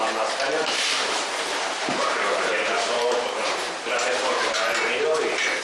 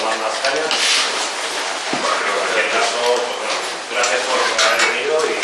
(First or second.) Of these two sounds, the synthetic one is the first